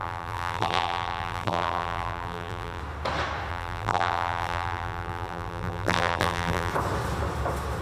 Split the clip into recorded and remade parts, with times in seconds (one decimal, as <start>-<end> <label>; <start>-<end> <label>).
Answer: 0.0-2.8 remade; 2.8-3.5 recorded; 3.5-6.7 remade; 6.7-7.8 recorded

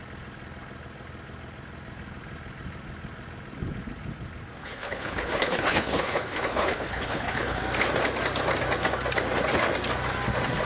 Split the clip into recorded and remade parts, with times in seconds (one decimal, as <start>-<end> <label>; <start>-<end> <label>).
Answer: 0.0-4.6 recorded; 4.6-7.6 remade; 7.6-10.7 recorded